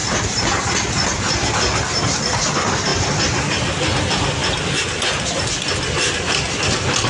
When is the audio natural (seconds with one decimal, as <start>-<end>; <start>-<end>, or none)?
0.7-7.1